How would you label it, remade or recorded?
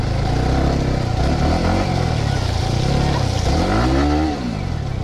recorded